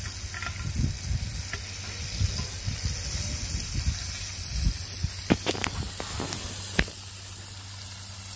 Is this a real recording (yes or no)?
yes